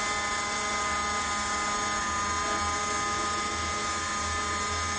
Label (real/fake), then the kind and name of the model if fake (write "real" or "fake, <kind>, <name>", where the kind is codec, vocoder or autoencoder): real